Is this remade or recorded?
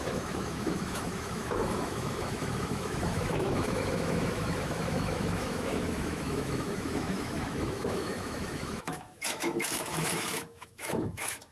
remade